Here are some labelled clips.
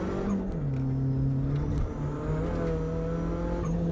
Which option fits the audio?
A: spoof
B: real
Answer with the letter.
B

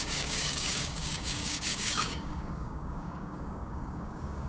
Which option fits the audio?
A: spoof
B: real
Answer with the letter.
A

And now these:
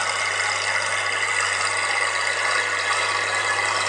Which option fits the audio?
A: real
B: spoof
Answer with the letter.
A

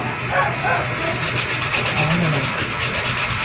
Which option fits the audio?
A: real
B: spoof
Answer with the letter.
A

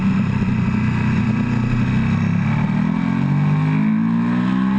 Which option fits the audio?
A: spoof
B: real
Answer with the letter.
B